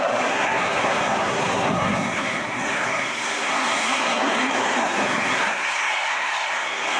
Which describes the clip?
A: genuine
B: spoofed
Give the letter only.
B